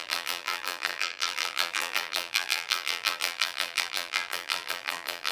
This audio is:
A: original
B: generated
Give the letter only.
B